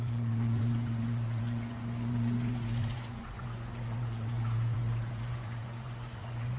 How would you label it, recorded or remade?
remade